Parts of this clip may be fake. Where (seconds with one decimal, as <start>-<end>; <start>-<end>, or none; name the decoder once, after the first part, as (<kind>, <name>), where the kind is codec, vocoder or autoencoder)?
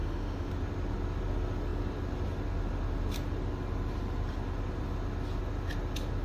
0.0-0.5 (autoencoder, DAC-VAE)